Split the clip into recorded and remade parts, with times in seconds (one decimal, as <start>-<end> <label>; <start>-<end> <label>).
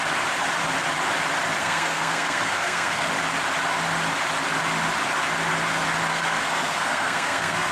0.0-1.6 recorded; 1.6-3.1 remade; 3.1-6.1 recorded; 6.1-7.7 remade